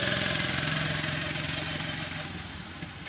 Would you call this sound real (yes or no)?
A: yes